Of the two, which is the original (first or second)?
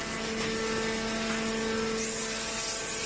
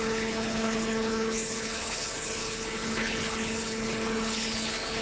first